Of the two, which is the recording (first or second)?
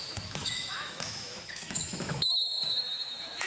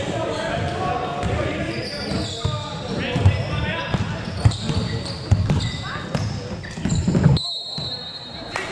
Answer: second